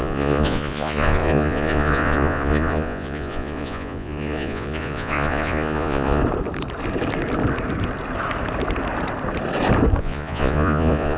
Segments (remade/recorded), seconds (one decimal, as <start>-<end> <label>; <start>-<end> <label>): 0.0-6.2 remade; 6.2-10.0 recorded; 10.0-11.2 remade